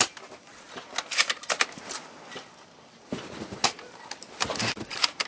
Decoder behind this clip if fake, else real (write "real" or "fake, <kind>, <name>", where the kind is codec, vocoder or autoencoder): real